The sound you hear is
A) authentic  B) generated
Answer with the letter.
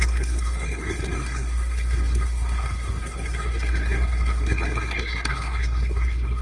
B